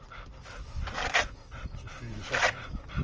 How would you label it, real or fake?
real